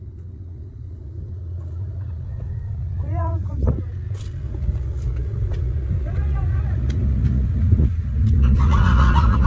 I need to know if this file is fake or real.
fake